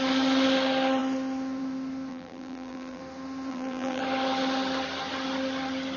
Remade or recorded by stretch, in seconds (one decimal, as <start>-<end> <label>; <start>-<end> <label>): 0.0-2.1 recorded; 2.1-3.0 remade; 3.0-3.5 recorded; 3.5-4.0 remade; 4.0-6.0 recorded